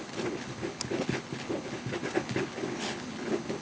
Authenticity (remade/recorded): remade